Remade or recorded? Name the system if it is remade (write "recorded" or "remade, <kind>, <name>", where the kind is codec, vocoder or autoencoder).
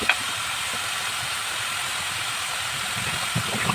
remade, vocoder, BigVGAN v2